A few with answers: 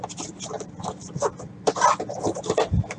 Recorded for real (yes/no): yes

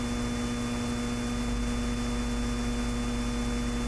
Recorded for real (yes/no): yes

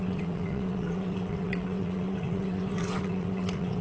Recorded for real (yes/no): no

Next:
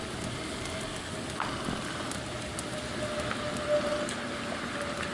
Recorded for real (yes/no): yes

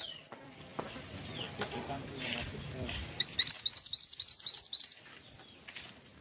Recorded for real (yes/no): yes